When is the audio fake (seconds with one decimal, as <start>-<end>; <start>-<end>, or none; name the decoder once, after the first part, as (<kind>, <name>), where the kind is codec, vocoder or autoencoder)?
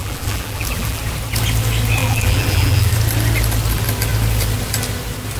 0.0-1.0 (vocoder, BigVGAN v2); 2.0-2.9